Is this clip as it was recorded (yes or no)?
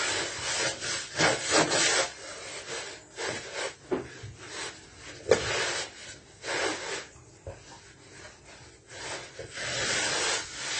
yes